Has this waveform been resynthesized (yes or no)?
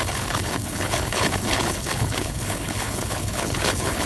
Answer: yes